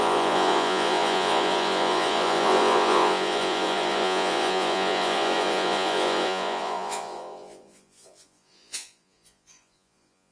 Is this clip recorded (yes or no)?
no